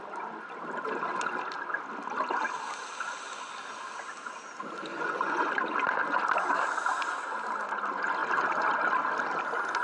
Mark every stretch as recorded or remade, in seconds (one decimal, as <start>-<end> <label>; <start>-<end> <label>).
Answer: 0.0-4.9 recorded; 4.9-5.5 remade; 5.5-9.8 recorded